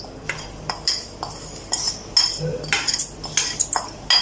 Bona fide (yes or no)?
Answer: yes